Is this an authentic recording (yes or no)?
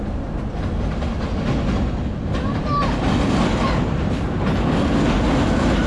yes